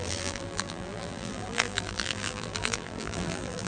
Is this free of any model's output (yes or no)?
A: no